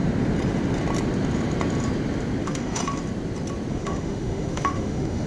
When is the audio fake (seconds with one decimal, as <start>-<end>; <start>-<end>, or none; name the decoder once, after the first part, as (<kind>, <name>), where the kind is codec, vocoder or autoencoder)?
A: 2.4-2.8 (autoencoder, DAC-VAE); 3.7-5.3